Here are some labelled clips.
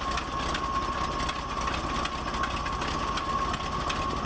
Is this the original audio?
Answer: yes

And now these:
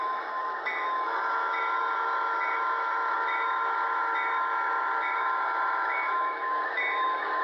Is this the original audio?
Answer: no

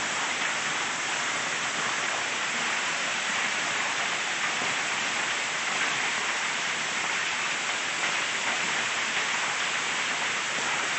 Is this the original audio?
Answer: yes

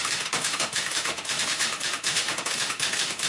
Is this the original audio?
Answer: no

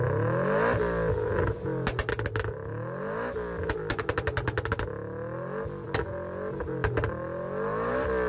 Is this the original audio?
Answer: yes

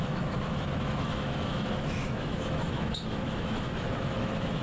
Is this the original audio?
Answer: no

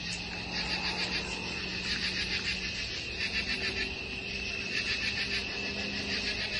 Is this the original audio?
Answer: yes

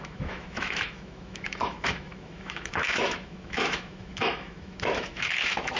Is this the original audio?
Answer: no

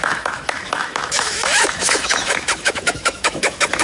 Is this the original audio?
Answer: no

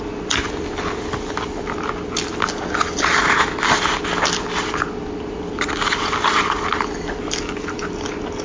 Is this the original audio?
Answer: yes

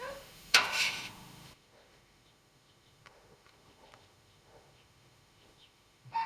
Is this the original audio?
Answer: no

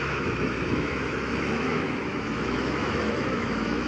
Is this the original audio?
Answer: no